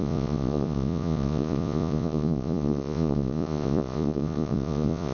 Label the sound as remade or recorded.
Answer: remade